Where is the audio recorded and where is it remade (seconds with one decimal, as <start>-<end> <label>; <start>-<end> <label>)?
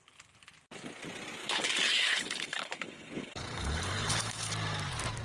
0.0-1.4 recorded; 1.4-4.5 remade; 4.5-5.2 recorded